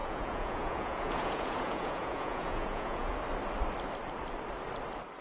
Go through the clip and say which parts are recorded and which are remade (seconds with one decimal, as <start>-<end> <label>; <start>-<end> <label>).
0.0-3.1 remade; 3.1-5.2 recorded